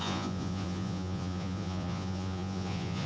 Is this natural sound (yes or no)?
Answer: no